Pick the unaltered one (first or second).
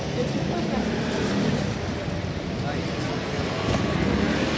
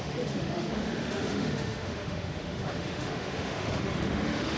first